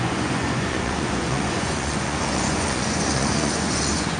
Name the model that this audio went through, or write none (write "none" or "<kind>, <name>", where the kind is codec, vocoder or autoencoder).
vocoder, Vocos